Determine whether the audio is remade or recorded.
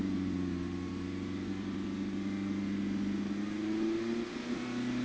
recorded